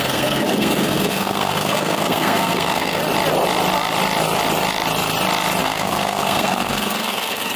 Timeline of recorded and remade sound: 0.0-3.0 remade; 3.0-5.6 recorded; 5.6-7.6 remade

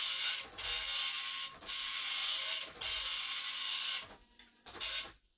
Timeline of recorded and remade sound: 0.0-0.7 remade; 0.7-1.5 recorded; 1.5-5.4 remade

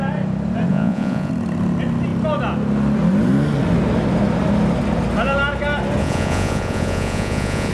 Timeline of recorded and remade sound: 0.0-0.7 recorded; 0.7-1.3 remade; 1.3-6.0 recorded; 6.0-7.7 remade

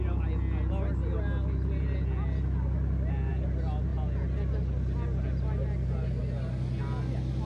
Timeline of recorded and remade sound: 0.0-7.4 recorded